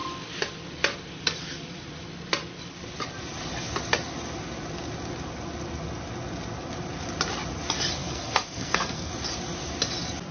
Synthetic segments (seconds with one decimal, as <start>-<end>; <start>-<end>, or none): 8.0-9.1